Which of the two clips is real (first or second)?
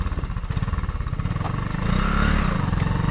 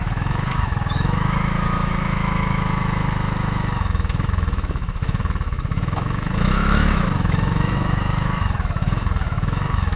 first